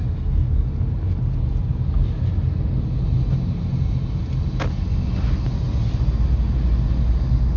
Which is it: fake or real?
real